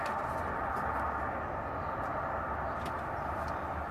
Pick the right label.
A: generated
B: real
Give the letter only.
B